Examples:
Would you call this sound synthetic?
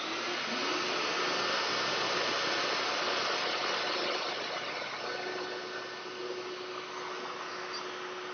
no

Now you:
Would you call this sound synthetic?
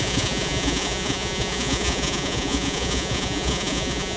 yes